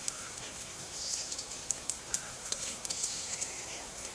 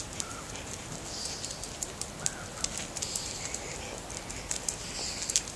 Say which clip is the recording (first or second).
second